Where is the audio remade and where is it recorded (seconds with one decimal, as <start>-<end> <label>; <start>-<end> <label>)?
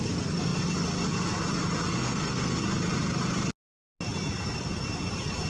0.0-1.9 recorded; 1.9-2.6 remade; 2.6-5.5 recorded